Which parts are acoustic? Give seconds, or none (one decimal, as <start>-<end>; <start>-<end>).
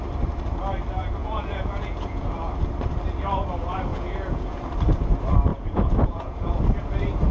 0.0-1.2; 2.3-3.9; 4.6-5.5; 6.6-7.3